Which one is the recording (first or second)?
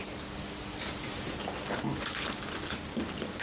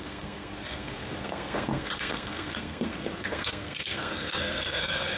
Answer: first